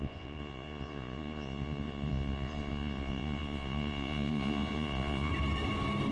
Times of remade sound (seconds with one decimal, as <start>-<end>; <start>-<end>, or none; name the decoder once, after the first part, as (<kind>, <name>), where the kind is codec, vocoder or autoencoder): 0.0-5.3 (vocoder, Vocos)

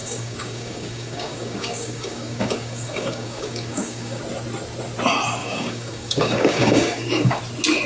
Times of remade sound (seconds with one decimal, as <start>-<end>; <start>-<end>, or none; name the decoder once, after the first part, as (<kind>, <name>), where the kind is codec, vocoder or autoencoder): 0.0-4.2 (codec, DAC); 5.4-7.4

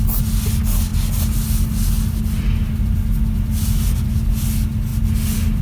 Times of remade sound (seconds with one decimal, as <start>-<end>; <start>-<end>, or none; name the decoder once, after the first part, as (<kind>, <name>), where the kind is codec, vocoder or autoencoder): none